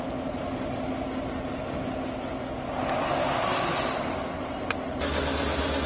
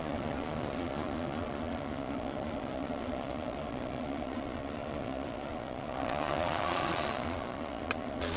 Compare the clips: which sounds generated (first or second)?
second